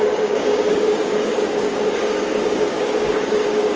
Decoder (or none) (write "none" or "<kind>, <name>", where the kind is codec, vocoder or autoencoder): codec, DAC